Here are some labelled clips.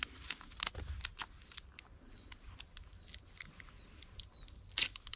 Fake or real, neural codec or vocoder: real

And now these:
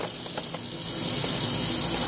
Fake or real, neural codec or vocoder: real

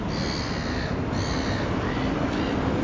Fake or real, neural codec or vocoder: real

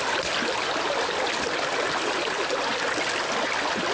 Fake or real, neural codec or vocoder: real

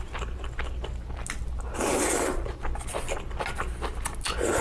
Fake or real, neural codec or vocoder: real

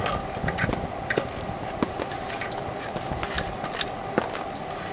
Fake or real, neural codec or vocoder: real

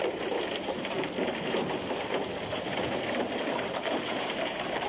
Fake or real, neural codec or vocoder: fake, vocoder, BigVGAN v2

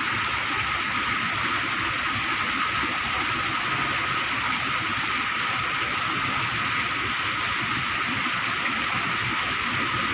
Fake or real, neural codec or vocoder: real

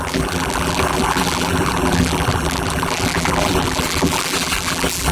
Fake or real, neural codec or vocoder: fake, vocoder, BigVGAN v2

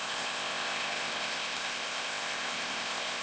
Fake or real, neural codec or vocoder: fake, codec, ZipCodec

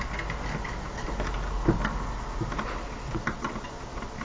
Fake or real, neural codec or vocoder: real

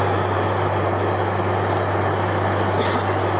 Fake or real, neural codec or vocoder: real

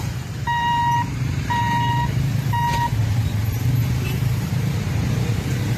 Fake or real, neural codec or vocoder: fake, vocoder, BigVGAN v2